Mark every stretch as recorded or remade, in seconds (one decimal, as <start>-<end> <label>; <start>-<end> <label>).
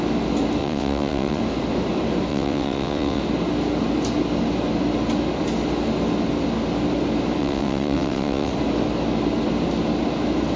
0.0-0.6 recorded; 0.6-1.4 remade; 1.4-2.3 recorded; 2.3-3.2 remade; 3.2-7.4 recorded; 7.4-8.5 remade; 8.5-10.6 recorded